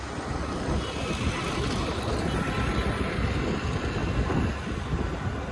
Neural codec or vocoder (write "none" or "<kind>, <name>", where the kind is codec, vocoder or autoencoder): none